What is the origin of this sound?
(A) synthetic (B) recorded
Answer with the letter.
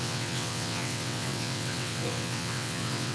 A